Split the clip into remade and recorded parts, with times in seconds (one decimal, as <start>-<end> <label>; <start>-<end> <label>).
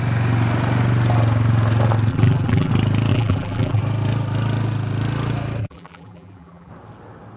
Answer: 0.0-2.1 recorded; 2.1-2.7 remade; 2.7-3.1 recorded; 3.1-3.8 remade; 3.8-5.6 recorded; 5.6-6.7 remade; 6.7-7.4 recorded